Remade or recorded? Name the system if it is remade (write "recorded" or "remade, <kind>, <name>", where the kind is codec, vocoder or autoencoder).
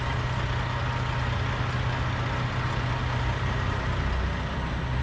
recorded